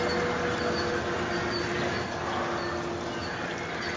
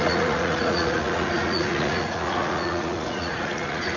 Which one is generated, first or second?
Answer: second